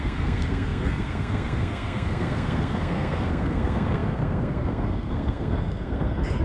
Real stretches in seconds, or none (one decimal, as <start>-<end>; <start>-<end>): none